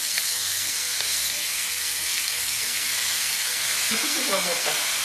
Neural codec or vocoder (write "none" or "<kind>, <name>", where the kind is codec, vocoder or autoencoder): codec, SNAC